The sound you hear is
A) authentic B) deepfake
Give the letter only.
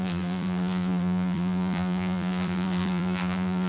B